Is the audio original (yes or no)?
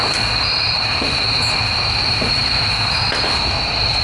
yes